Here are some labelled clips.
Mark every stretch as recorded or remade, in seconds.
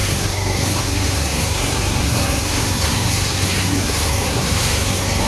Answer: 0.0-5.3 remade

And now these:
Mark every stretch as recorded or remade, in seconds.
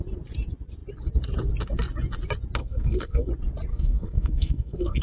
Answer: 0.0-2.6 recorded; 2.6-3.3 remade; 3.3-3.7 recorded; 3.7-5.0 remade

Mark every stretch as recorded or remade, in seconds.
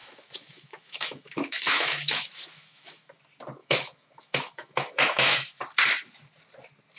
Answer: 0.0-3.2 remade; 3.2-3.6 recorded; 3.6-5.6 remade; 5.6-7.0 recorded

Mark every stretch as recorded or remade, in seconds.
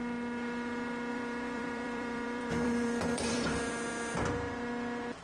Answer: 0.0-1.1 recorded; 1.1-3.7 remade; 3.7-5.2 recorded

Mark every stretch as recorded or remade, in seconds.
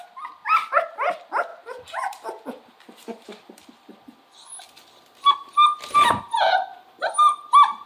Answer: 0.0-7.9 recorded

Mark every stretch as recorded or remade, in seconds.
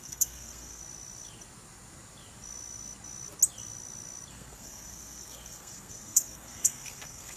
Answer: 0.0-0.8 remade; 0.8-4.3 recorded; 4.3-7.4 remade